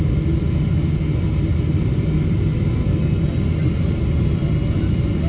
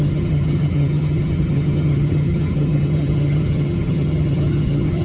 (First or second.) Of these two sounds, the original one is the first